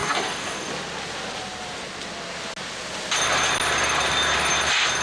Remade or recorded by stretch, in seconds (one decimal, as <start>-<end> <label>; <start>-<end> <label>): 0.0-0.7 remade; 0.7-5.0 recorded